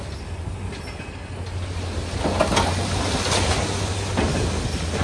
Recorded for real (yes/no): yes